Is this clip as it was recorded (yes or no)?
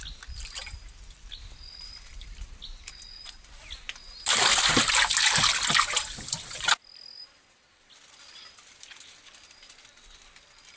yes